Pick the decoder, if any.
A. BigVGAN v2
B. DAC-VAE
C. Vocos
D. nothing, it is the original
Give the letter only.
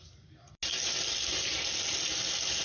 D